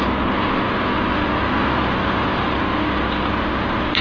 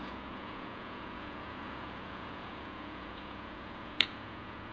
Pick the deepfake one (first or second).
second